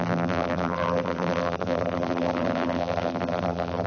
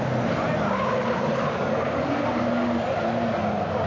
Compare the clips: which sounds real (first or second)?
second